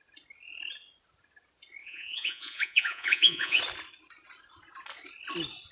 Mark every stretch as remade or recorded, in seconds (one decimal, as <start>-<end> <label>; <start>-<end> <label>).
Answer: 0.0-1.8 recorded; 1.8-3.6 remade; 3.6-5.7 recorded